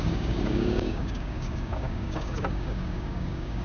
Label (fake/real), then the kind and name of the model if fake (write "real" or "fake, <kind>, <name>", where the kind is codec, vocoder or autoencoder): fake, codec, DAC